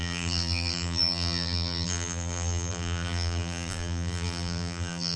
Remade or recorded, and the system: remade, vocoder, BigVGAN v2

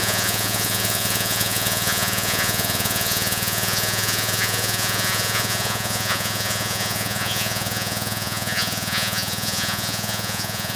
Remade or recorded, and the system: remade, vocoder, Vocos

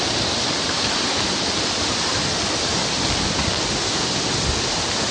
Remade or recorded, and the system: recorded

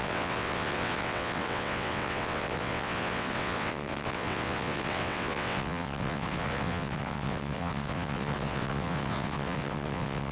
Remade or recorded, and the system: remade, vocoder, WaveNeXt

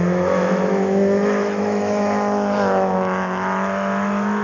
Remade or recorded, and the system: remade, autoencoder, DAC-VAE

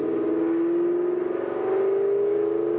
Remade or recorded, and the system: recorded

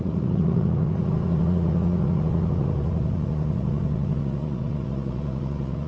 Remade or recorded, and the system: remade, vocoder, Vocos